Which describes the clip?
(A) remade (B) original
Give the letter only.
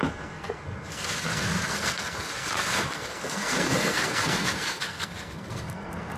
A